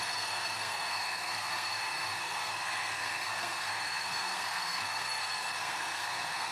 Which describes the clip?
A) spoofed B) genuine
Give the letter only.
A